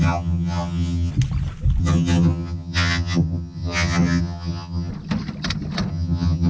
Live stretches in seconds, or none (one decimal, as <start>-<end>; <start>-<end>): 1.1-1.8; 4.9-5.9